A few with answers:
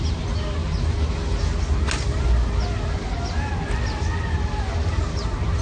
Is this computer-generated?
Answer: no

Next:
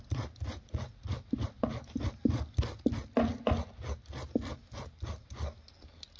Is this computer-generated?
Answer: no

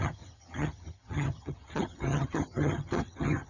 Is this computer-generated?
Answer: yes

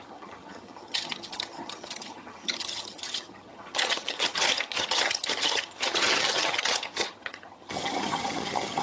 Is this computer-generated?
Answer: yes